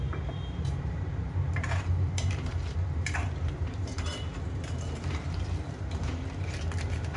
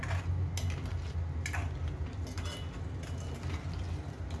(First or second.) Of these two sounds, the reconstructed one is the first